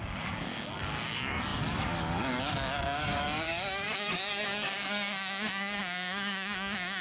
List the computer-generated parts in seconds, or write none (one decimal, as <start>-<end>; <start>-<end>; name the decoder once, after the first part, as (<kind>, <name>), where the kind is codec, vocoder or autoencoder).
0.0-7.0 (codec, DAC)